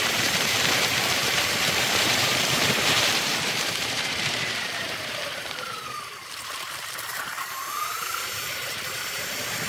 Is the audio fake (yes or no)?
yes